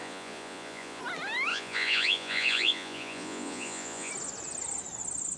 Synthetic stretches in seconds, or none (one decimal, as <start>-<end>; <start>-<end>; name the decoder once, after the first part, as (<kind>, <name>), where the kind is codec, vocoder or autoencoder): 0.0-1.0 (vocoder, Vocos); 1.5-4.1